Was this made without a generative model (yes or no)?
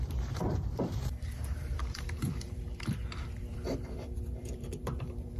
no